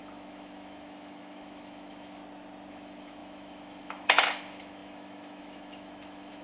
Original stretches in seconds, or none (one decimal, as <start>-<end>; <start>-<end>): 2.2-2.7